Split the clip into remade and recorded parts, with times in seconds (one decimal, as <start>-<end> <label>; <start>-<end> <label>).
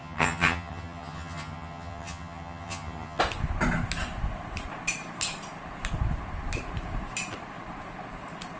0.0-3.2 remade; 3.2-8.6 recorded